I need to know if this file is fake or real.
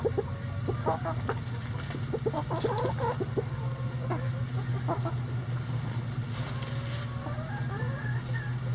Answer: real